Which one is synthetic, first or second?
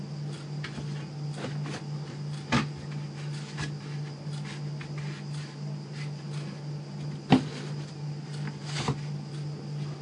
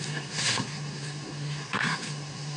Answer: second